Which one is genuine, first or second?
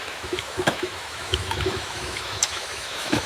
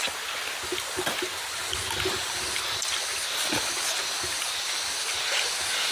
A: second